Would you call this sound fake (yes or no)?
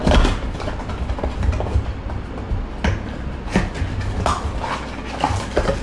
no